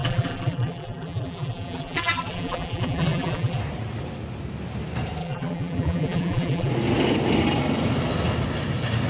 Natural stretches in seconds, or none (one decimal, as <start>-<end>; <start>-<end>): 3.6-5.2; 6.7-9.1